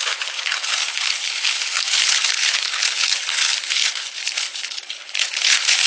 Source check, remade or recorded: remade